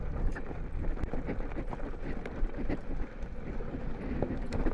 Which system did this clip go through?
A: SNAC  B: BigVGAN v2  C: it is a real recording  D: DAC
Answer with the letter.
C